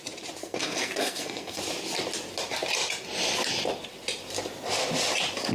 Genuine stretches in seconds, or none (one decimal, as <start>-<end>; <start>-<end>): 0.0-0.4; 1.6-5.5

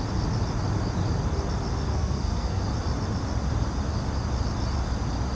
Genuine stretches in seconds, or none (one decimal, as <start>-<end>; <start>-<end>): 0.0-1.9; 2.6-5.4

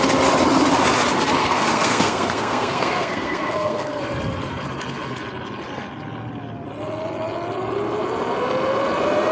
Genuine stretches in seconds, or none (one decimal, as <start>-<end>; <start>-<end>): 0.0-1.4; 4.0-9.3